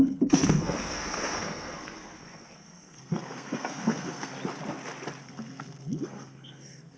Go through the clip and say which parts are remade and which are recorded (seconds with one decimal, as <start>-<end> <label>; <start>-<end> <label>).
0.0-4.3 remade; 4.3-5.2 recorded; 5.2-7.0 remade